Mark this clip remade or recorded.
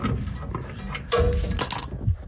recorded